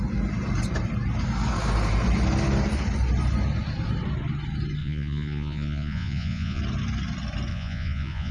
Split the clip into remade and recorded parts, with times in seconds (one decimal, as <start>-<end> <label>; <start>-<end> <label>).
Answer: 0.0-4.8 recorded; 4.8-6.6 remade; 6.6-7.5 recorded; 7.5-8.3 remade